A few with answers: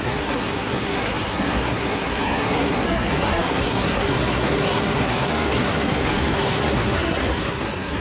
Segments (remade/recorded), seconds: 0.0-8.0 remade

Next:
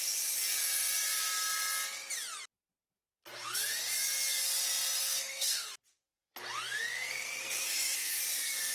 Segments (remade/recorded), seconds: 0.0-5.0 recorded; 5.0-5.7 remade; 5.7-6.9 recorded; 6.9-8.2 remade; 8.2-8.7 recorded

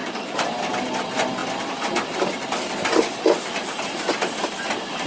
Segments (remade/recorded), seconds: 0.0-0.6 remade; 0.6-5.1 recorded

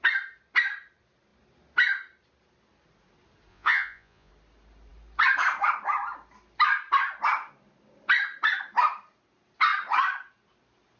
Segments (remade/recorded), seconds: 0.0-3.5 recorded; 3.5-4.3 remade; 4.3-11.0 recorded

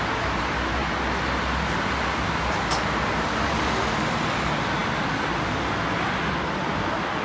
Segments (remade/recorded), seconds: 0.0-7.2 recorded

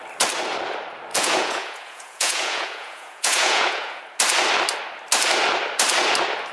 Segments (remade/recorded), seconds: 0.0-1.1 recorded; 1.1-4.0 remade; 4.0-6.5 recorded

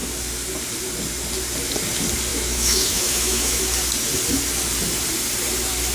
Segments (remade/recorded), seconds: 0.0-2.3 recorded; 2.3-3.6 remade; 3.6-5.9 recorded

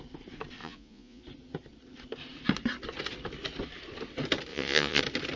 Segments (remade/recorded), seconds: 0.0-0.6 recorded; 0.6-1.2 remade; 1.2-4.5 recorded; 4.5-5.0 remade; 5.0-5.4 recorded